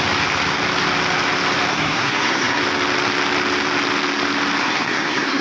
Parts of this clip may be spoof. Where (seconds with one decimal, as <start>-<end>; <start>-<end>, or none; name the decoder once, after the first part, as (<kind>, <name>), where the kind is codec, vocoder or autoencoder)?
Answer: 1.7-2.6 (codec, SNAC); 4.6-5.4

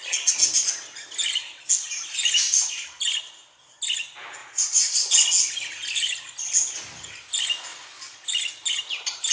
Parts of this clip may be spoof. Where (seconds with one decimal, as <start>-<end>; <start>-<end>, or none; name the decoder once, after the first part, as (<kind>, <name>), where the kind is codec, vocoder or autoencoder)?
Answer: 4.4-5.1 (vocoder, Vocos)